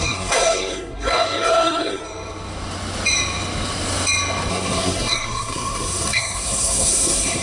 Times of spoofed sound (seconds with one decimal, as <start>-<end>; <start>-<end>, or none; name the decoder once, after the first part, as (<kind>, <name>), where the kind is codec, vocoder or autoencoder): 0.0-2.0 (codec, SNAC); 4.5-7.4